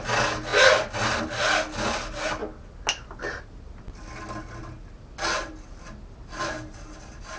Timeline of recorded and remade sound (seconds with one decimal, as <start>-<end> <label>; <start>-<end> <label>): 0.0-7.4 recorded